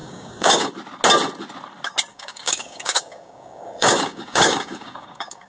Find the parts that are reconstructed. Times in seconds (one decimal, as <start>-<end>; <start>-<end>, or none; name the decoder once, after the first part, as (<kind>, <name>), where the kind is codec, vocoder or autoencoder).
0.0-0.7 (codec, DAC); 2.1-5.5